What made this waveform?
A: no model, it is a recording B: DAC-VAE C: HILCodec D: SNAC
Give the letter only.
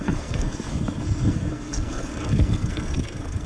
D